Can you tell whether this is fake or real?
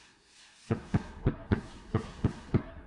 fake